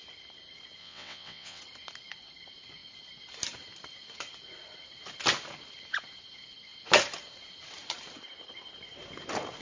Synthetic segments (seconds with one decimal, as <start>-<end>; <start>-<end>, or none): 0.8-1.6